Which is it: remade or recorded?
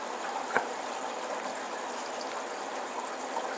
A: recorded